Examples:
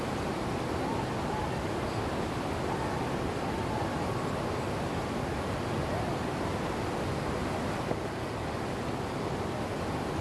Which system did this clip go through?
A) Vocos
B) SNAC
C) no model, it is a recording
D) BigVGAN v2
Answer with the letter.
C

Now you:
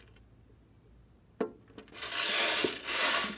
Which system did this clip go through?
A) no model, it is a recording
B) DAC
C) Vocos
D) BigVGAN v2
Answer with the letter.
A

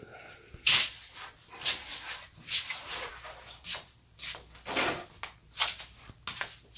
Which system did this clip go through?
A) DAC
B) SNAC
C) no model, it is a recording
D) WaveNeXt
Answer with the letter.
C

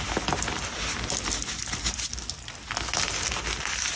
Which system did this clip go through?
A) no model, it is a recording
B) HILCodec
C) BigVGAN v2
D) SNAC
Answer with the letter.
A